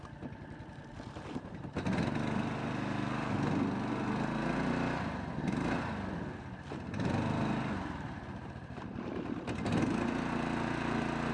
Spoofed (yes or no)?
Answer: no